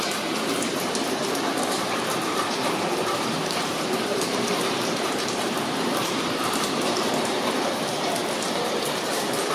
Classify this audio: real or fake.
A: fake